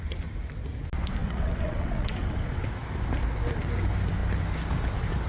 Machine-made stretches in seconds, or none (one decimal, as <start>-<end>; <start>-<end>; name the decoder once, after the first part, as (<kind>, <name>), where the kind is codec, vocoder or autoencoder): 1.2-2.7 (vocoder, WaveNeXt)